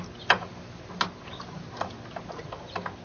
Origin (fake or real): real